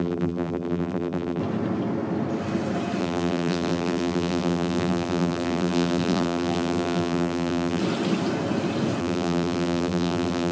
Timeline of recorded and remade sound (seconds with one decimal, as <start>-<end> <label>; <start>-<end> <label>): 0.0-1.4 remade; 1.4-3.0 recorded; 3.0-7.8 remade; 7.8-9.0 recorded; 9.0-10.5 remade